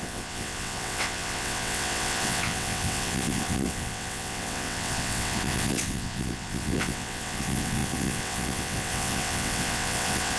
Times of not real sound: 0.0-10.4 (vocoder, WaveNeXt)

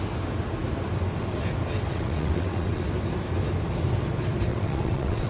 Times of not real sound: 1.9-2.8 (vocoder, WaveNeXt); 4.5-5.3

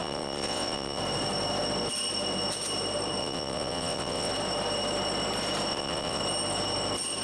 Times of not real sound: 0.0-1.0 (vocoder, WaveNeXt); 3.2-4.3; 5.7-6.2

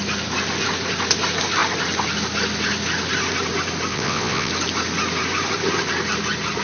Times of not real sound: 3.9-4.5 (vocoder, WaveNeXt)